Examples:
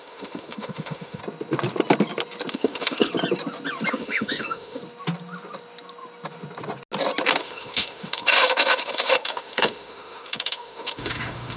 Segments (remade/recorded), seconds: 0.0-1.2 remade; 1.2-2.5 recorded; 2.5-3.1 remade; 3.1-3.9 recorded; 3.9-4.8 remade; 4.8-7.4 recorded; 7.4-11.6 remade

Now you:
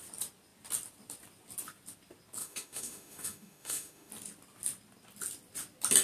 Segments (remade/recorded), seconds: 0.0-2.4 recorded; 2.4-4.1 remade; 4.1-6.0 recorded

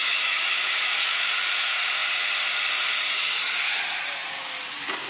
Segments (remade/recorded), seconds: 0.0-1.3 remade; 1.3-5.1 recorded

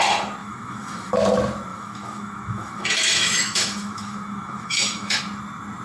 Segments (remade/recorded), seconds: 0.0-0.4 recorded; 0.4-1.1 remade; 1.1-1.7 recorded; 1.7-5.2 remade; 5.2-5.8 recorded